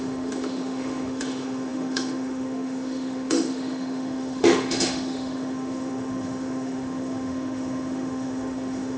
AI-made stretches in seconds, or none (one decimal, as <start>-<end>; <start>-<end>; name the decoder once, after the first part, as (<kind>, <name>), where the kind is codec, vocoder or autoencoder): 0.0-9.0 (autoencoder, DAC-VAE)